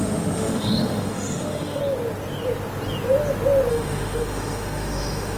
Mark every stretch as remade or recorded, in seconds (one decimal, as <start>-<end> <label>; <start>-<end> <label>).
0.0-1.8 remade; 1.8-3.7 recorded; 3.7-5.4 remade